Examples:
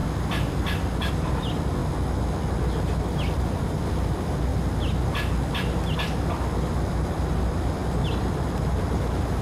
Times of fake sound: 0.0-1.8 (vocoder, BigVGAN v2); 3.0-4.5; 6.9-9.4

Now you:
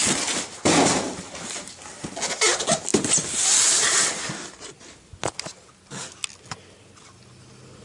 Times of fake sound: 0.0-2.0 (vocoder, BigVGAN v2); 2.9-5.1

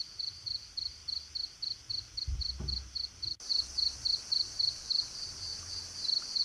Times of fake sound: 0.0-1.0 (vocoder, BigVGAN v2); 2.2-3.5; 4.2-6.4